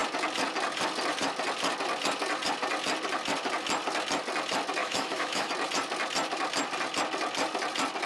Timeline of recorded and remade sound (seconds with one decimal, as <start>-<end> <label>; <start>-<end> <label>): 0.0-4.8 recorded; 4.8-5.5 remade; 5.5-8.1 recorded